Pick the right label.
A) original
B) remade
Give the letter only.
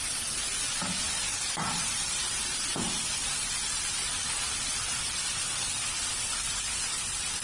B